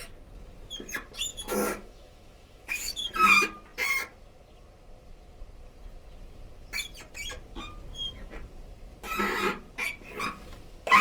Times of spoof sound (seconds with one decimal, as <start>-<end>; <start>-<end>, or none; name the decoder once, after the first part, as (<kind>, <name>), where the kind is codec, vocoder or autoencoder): 1.3-3.1 (autoencoder, DAC-VAE)